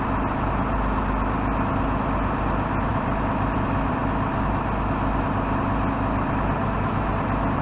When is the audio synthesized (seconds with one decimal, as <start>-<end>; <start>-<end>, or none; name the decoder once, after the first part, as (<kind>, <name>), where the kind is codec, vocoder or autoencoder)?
2.9-4.0 (vocoder, BigVGAN v2)